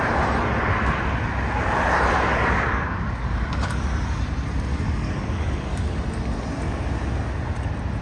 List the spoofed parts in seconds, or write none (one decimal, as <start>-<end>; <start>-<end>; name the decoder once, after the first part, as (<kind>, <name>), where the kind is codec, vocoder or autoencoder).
2.3-3.8 (codec, DAC); 4.7-6.0

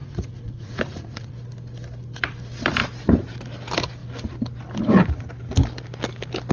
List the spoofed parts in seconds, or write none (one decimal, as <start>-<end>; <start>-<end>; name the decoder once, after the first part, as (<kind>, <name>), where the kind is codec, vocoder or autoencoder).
0.0-1.3 (vocoder, Vocos)

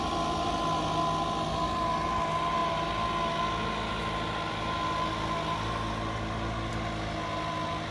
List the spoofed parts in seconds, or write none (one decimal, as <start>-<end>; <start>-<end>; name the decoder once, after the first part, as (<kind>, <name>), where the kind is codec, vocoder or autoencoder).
none

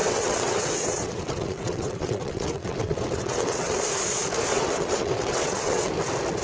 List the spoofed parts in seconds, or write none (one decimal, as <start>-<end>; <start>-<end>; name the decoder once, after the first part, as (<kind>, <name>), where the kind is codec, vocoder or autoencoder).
0.0-3.8 (vocoder, WaveNeXt); 4.5-5.9

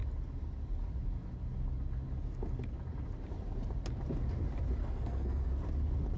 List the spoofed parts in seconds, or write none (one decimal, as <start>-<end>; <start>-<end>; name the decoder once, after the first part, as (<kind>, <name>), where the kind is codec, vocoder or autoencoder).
4.8-5.5 (codec, SNAC)

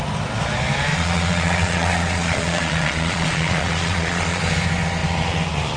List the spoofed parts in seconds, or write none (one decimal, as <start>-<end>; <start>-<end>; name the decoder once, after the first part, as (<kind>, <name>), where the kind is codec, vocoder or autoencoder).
0.9-4.4 (vocoder, Vocos)

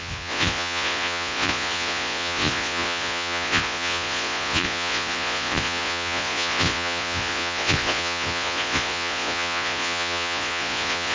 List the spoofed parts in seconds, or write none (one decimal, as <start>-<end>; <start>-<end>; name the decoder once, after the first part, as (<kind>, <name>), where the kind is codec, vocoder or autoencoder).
0.0-11.1 (vocoder, Vocos)

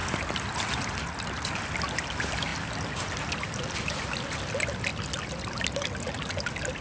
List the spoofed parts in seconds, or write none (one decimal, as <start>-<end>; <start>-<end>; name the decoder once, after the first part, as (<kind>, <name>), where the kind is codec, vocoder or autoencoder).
4.9-5.5 (vocoder, BigVGAN v2)